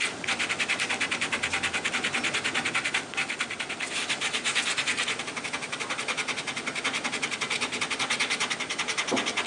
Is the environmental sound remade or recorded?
recorded